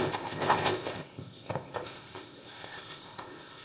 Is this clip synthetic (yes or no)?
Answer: yes